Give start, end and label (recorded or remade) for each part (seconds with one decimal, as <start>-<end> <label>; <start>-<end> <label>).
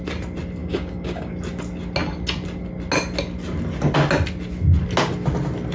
0.0-0.6 recorded; 0.6-1.3 remade; 1.3-5.7 recorded